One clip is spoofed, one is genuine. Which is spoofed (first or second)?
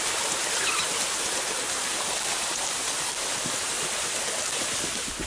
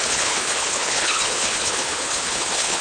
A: second